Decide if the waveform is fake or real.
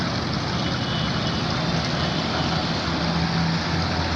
real